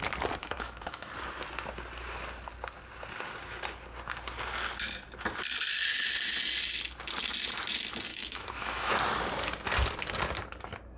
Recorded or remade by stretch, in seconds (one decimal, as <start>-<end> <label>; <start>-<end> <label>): 0.0-0.4 recorded; 0.4-1.1 remade; 1.1-8.1 recorded; 8.1-8.9 remade; 8.9-11.0 recorded

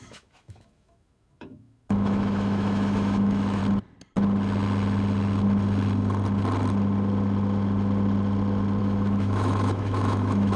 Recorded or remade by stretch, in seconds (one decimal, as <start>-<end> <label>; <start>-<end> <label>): 0.0-3.6 remade; 3.6-8.8 recorded; 8.8-10.6 remade